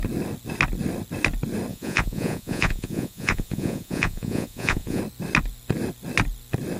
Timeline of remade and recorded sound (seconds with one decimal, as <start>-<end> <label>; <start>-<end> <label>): 0.0-1.7 recorded; 1.7-5.0 remade; 5.0-6.8 recorded